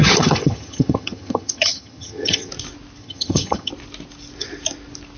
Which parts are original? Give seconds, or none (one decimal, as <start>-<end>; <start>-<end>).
2.5-3.0; 3.7-5.2